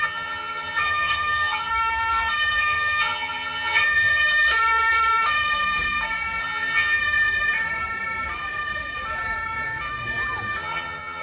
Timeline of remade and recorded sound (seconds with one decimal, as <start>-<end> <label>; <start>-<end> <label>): 0.0-1.7 remade; 1.7-2.6 recorded; 2.6-4.2 remade; 4.2-6.4 recorded; 6.4-7.0 remade; 7.0-10.6 recorded; 10.6-11.2 remade